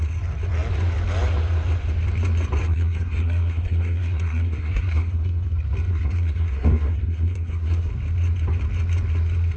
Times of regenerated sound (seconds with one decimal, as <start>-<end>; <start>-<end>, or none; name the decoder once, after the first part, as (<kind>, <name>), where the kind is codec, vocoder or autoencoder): 2.6-5.5 (codec, SNAC); 5.9-7.9